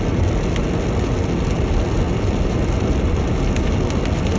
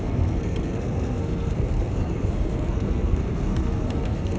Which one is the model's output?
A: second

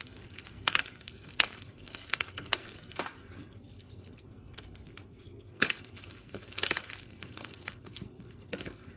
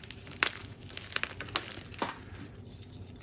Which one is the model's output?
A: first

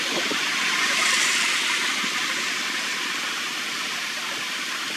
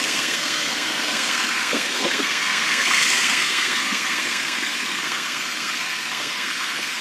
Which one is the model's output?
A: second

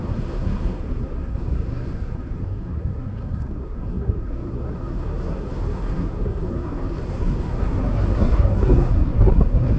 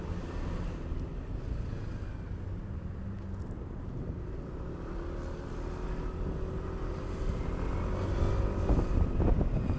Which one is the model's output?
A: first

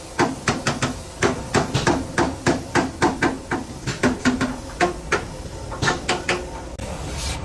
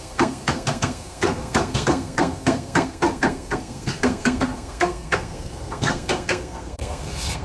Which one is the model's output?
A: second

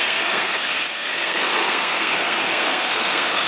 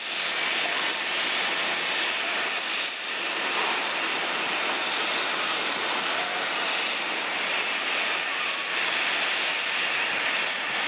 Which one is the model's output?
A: first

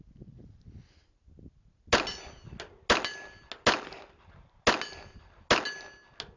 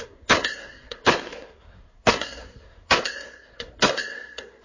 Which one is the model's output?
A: second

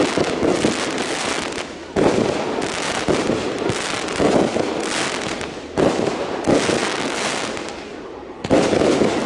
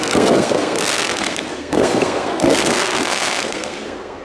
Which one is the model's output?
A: second